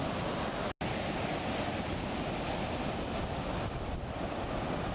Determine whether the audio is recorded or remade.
recorded